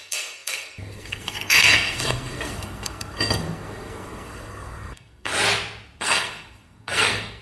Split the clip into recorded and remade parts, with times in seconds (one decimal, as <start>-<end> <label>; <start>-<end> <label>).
0.0-5.3 remade; 5.3-6.0 recorded; 6.0-7.4 remade